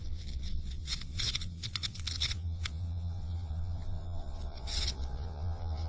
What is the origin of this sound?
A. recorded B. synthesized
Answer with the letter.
B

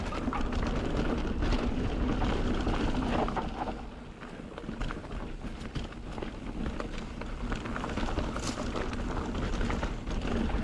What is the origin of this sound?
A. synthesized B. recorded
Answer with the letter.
B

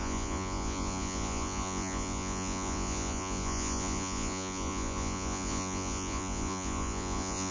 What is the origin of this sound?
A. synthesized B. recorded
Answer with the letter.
A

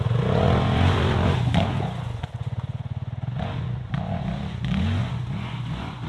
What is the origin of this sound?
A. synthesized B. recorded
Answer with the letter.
A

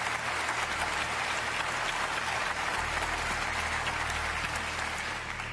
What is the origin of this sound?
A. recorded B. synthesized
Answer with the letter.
A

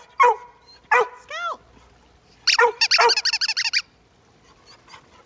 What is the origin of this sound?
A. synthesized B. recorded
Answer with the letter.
B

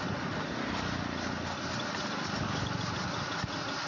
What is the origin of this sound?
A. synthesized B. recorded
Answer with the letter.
B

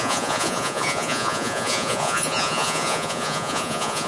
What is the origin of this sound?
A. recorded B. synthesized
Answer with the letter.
B